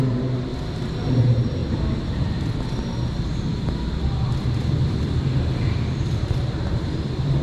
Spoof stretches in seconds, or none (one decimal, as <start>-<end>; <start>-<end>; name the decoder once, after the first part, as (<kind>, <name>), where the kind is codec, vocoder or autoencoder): 0.0-0.5 (vocoder, BigVGAN v2); 1.2-1.6; 6.0-7.4